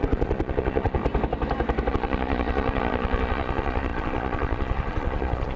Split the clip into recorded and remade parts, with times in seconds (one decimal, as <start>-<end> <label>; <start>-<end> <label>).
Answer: 0.0-1.0 remade; 1.0-1.9 recorded; 1.9-5.6 remade